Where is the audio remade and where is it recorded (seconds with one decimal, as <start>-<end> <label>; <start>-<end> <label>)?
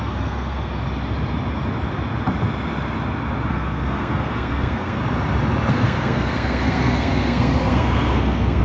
0.0-0.7 remade; 0.7-3.5 recorded; 3.5-5.0 remade; 5.0-5.7 recorded; 5.7-8.6 remade